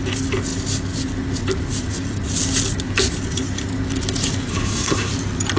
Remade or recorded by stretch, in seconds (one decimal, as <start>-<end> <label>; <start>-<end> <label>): 0.0-4.5 recorded; 4.5-5.1 remade; 5.1-5.6 recorded

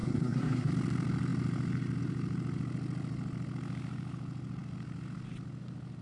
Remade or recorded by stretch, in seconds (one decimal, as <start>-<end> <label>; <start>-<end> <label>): 0.0-0.7 remade; 0.7-6.0 recorded